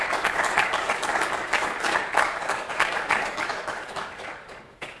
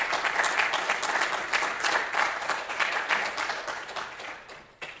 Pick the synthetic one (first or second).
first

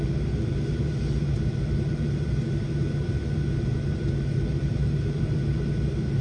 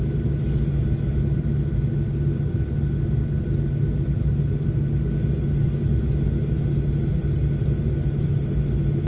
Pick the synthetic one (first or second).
first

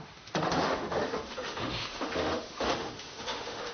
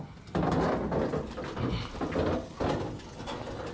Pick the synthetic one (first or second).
first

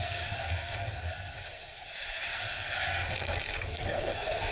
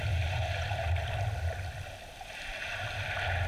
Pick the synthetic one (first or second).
first